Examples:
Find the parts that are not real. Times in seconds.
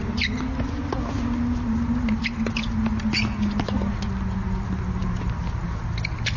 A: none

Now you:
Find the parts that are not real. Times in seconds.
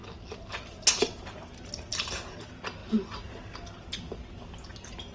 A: none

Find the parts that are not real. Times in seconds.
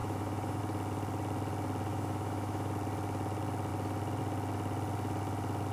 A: 0.0-0.6 (autoencoder, DAC-VAE); 1.9-2.7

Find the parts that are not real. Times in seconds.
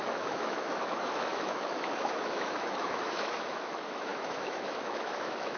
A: 0.0-5.6 (autoencoder, DAC-VAE)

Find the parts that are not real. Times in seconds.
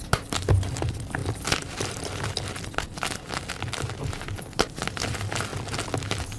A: none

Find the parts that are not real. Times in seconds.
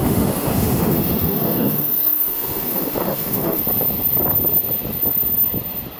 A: 0.0-3.6 (autoencoder, DAC-VAE)